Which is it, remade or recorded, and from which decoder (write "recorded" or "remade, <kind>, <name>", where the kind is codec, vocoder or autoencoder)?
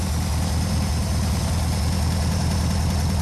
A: recorded